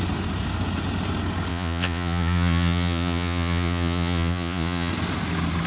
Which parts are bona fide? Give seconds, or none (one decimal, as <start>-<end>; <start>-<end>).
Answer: 0.0-1.5; 4.9-5.7